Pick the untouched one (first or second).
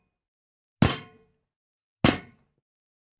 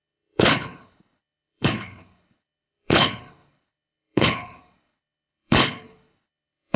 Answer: first